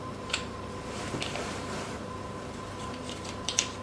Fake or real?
real